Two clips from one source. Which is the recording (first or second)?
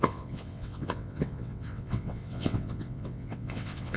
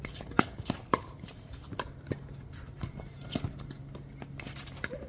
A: second